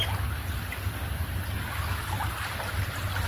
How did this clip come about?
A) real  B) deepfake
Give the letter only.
A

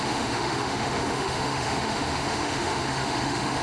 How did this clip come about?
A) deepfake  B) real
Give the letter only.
A